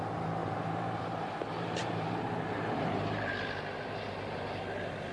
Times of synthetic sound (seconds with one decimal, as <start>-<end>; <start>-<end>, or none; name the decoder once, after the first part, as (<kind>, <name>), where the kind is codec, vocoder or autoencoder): 0.4-3.5 (vocoder, BigVGAN v2)